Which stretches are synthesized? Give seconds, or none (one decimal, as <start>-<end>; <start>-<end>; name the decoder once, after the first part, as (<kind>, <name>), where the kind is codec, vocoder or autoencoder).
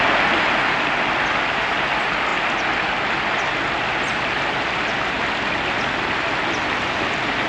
none